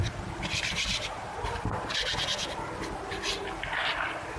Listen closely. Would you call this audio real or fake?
real